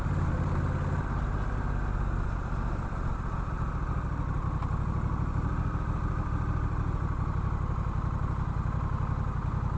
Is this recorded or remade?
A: recorded